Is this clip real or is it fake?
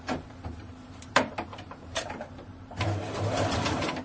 fake